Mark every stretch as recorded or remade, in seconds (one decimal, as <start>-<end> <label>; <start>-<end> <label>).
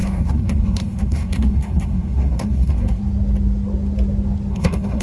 0.0-3.0 remade; 3.0-4.5 recorded; 4.5-5.0 remade